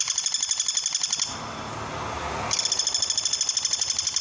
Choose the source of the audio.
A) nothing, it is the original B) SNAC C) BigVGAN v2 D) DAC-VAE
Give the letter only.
A